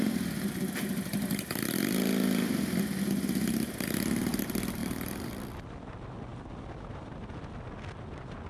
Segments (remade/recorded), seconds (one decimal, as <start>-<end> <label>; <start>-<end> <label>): 0.0-4.8 recorded; 4.8-5.3 remade; 5.3-8.5 recorded